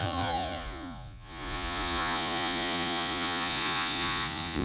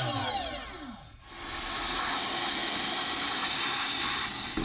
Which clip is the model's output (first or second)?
first